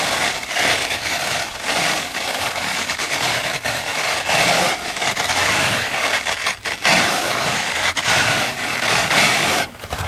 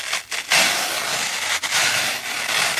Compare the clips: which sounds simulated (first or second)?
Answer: first